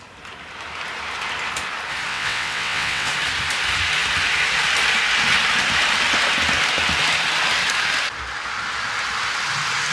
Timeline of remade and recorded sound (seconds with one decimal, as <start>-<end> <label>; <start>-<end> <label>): 0.0-2.1 recorded; 2.1-3.1 remade; 3.1-9.9 recorded